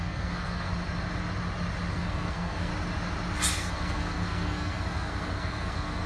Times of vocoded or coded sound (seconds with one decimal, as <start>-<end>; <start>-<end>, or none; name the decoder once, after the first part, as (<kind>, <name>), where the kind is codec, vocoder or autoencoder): 0.0-0.7 (codec, SNAC); 1.9-2.7; 3.5-6.1